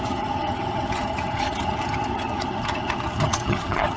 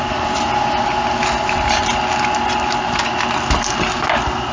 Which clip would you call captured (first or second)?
second